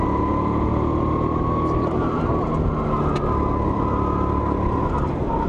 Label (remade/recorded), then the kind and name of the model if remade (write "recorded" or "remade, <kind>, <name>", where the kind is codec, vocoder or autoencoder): recorded